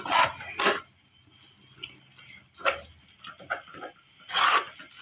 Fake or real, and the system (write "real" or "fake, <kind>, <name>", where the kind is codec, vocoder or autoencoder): real